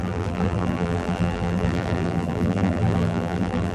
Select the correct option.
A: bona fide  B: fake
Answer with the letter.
B